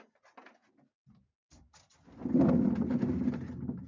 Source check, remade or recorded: recorded